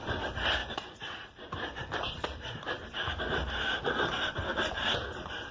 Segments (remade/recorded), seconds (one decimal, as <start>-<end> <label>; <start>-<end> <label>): 0.0-0.6 recorded; 0.6-3.9 remade; 3.9-4.5 recorded; 4.5-5.5 remade